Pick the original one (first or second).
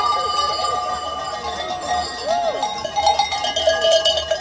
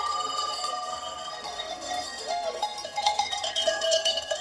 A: first